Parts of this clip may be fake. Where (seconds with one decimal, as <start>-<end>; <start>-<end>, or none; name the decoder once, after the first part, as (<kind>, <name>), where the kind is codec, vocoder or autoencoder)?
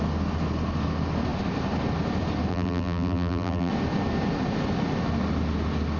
2.5-3.7 (vocoder, BigVGAN v2)